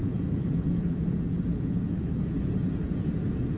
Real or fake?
fake